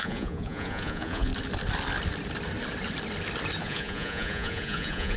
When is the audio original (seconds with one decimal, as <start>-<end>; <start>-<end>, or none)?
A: 1.3-3.6